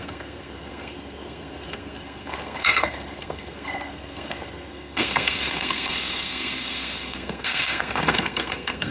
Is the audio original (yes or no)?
no